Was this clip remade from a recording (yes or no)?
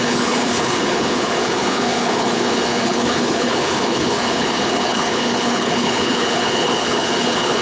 yes